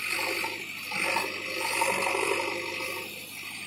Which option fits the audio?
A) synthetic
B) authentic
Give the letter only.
B